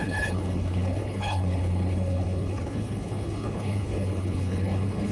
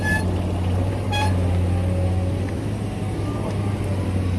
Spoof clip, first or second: first